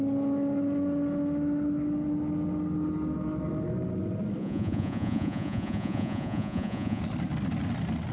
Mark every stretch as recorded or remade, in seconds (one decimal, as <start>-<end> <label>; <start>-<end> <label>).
0.0-4.4 recorded; 4.4-7.0 remade; 7.0-8.1 recorded